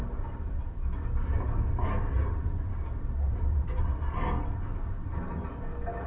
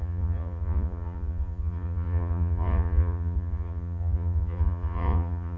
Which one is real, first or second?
first